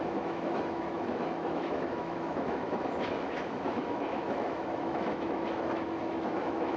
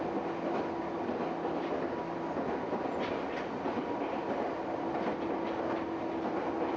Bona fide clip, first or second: second